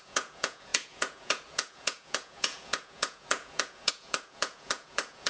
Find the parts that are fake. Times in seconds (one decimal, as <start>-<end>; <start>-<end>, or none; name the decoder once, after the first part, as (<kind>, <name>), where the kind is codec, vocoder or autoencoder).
0.0-5.3 (vocoder, Vocos)